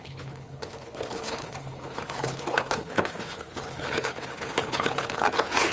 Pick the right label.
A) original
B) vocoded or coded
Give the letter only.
B